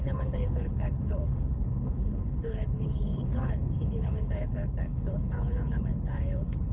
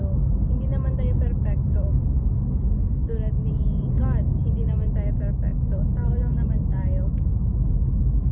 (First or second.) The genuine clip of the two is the second